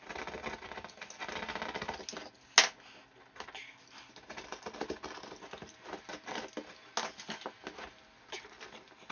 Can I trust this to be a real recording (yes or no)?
yes